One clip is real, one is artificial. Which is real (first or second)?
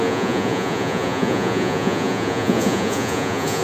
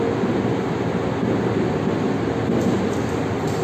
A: second